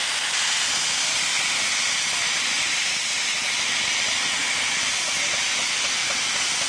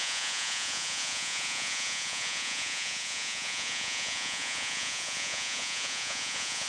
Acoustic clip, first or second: first